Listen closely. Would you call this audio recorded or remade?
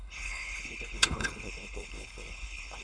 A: remade